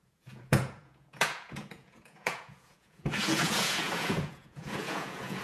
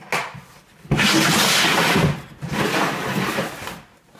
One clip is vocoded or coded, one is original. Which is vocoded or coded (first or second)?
first